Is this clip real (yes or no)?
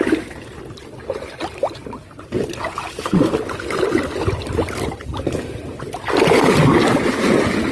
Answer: yes